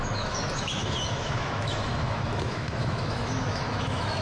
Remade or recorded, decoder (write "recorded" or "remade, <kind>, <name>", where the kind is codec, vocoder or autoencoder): remade, autoencoder, DAC-VAE